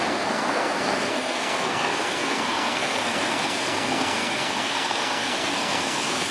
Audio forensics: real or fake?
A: fake